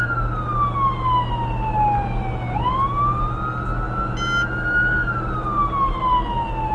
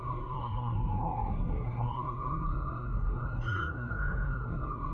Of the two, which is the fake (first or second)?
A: second